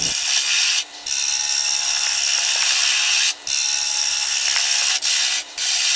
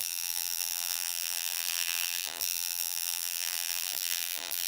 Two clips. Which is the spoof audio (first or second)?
second